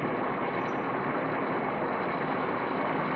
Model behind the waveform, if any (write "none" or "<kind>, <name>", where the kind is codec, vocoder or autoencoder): none